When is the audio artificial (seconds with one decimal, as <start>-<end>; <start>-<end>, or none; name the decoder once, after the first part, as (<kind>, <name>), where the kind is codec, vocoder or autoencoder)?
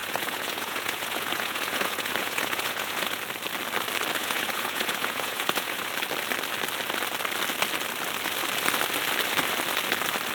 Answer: 0.0-3.2 (vocoder, Vocos); 4.2-5.9